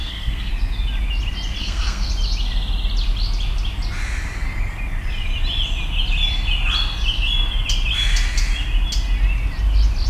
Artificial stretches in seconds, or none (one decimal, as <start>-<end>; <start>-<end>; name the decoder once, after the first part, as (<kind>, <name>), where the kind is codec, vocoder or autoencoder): 0.0-0.5 (codec, SNAC); 1.6-2.1